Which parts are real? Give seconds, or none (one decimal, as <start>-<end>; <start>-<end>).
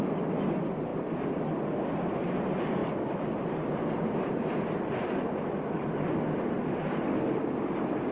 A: 0.0-8.1